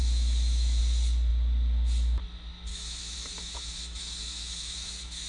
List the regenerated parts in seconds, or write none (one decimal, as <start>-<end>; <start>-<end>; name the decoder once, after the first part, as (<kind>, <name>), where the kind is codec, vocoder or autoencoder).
0.0-0.8 (autoencoder, DAC-VAE); 2.7-5.3